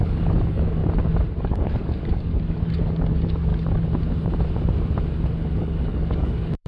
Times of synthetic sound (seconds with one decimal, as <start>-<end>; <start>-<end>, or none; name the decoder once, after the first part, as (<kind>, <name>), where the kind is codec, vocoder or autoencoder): 0.0-0.8 (codec, DAC); 1.4-3.5; 5.6-6.7